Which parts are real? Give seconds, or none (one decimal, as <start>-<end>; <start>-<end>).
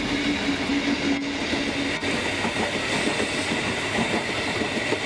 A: 0.0-5.1